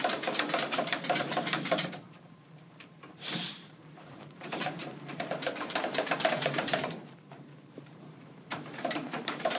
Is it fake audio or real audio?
fake